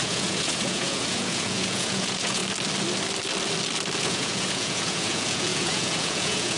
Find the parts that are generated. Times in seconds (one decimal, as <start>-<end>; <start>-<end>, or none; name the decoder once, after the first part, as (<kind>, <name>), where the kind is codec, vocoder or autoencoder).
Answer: 0.0-2.4 (vocoder, Vocos); 4.0-6.6